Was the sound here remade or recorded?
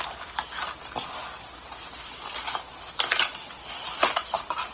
recorded